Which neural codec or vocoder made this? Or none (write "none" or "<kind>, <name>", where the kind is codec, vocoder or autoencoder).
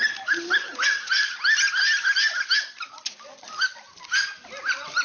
none